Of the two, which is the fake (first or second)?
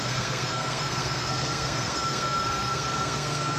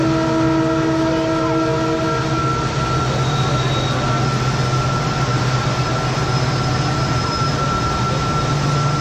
first